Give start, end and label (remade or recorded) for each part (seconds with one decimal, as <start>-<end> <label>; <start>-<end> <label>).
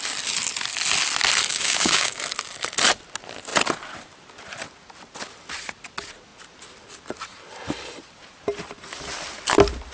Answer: 0.0-1.5 recorded; 1.5-2.2 remade; 2.2-9.9 recorded